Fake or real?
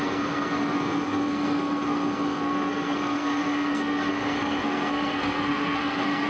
fake